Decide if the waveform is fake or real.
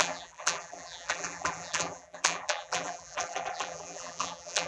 fake